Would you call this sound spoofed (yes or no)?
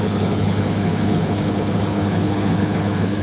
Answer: yes